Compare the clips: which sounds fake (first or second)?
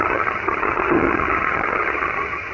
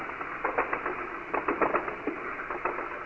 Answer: first